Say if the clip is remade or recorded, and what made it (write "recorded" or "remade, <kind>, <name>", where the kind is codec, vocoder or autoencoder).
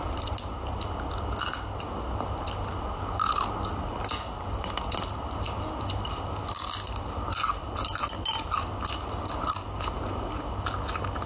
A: recorded